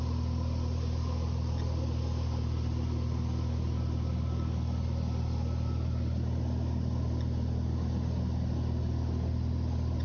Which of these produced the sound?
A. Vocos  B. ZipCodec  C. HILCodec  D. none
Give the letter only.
D